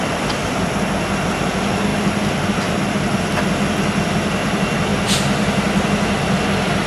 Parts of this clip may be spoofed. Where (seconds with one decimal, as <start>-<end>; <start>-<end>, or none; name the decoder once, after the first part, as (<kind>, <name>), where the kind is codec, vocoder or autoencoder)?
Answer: none